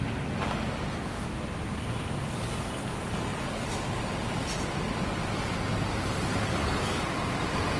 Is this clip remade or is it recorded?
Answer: recorded